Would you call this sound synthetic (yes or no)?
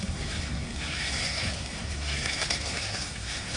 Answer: yes